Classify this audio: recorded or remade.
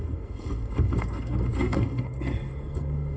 remade